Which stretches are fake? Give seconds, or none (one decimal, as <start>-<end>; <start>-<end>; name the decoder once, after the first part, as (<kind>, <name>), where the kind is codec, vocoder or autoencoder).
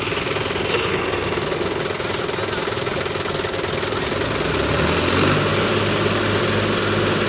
none